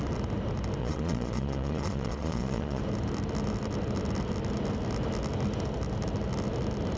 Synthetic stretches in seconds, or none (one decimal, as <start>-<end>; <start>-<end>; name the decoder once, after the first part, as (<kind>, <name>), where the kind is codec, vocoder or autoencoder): 0.8-2.8 (vocoder, Vocos)

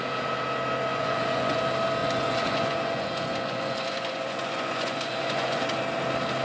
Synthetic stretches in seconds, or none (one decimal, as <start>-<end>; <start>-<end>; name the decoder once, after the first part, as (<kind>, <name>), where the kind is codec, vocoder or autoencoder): 0.9-1.6 (vocoder, Vocos); 2.0-5.8

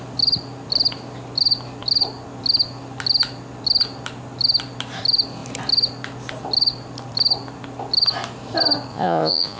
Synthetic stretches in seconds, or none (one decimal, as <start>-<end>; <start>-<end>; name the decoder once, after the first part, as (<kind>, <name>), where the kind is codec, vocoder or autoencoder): 8.9-9.6 (vocoder, Vocos)

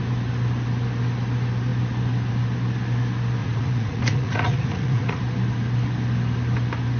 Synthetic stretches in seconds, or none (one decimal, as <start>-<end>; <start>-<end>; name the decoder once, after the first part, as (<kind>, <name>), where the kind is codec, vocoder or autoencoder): 3.4-5.2 (vocoder, Vocos)

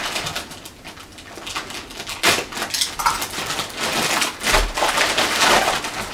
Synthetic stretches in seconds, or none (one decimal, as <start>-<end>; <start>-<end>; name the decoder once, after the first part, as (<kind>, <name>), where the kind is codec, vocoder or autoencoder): none

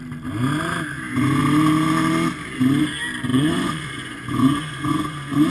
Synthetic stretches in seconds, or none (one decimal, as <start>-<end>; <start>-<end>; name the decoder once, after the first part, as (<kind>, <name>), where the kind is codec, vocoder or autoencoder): 3.3-5.5 (vocoder, Vocos)

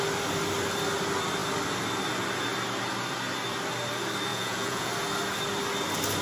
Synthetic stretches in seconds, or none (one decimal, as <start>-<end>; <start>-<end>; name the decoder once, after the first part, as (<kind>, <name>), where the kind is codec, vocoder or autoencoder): 4.3-4.9 (vocoder, Vocos)

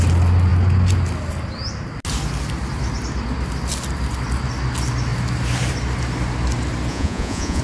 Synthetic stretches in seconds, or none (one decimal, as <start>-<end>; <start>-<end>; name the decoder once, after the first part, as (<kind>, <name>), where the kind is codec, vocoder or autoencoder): 6.9-7.6 (vocoder, Vocos)